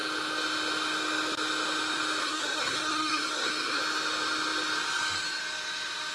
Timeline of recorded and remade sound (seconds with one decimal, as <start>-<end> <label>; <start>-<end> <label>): 0.0-2.2 recorded; 2.2-3.8 remade; 3.8-6.1 recorded